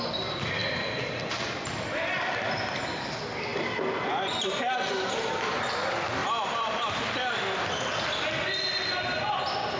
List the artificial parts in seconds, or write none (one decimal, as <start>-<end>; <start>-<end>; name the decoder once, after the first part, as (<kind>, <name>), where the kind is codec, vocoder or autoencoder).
0.6-1.2 (vocoder, BigVGAN v2); 6.2-7.7